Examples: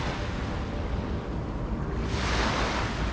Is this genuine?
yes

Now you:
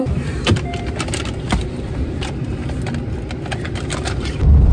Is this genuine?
yes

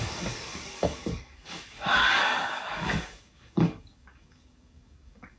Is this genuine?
no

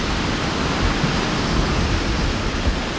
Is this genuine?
yes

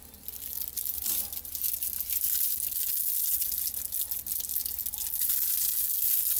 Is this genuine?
yes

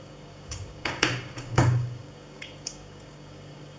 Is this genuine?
no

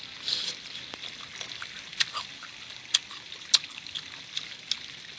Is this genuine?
yes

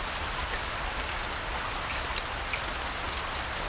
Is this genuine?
yes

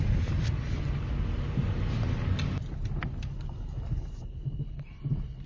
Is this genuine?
yes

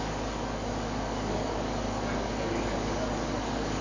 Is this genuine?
no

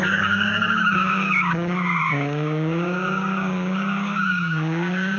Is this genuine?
no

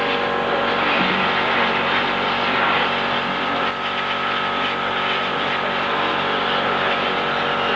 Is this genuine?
yes